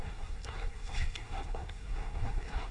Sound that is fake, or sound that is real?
fake